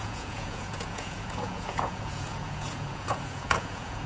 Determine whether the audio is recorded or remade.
remade